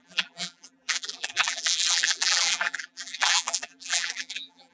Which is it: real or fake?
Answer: fake